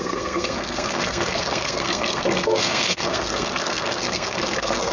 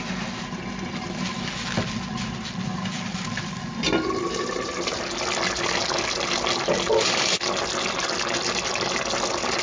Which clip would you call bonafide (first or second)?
second